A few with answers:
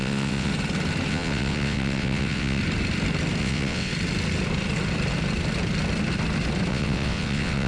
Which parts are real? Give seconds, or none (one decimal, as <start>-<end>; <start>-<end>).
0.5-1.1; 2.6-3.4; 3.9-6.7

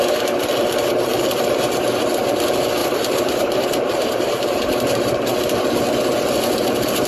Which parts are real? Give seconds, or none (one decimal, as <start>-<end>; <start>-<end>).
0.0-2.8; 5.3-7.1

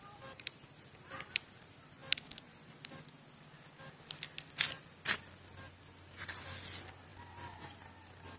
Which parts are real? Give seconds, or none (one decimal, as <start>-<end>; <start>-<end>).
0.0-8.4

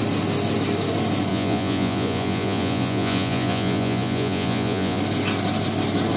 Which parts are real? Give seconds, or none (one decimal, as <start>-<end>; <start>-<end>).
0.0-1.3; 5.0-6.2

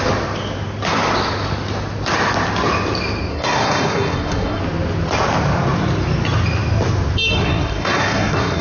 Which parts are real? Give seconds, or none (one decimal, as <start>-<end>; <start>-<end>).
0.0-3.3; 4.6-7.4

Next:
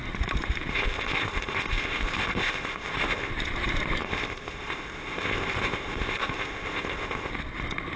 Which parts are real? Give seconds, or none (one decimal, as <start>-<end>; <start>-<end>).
0.0-0.7; 3.3-4.0; 7.3-8.0

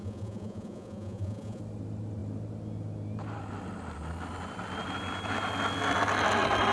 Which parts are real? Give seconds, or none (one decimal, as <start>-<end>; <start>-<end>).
1.6-6.7